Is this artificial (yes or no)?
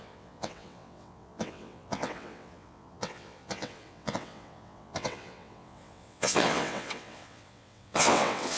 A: yes